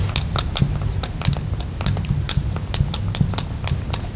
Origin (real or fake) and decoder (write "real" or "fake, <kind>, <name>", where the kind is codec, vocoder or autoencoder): real